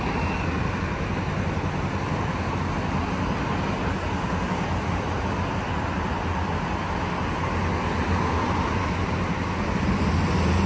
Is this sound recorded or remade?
recorded